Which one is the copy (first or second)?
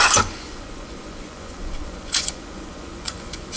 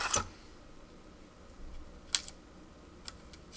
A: first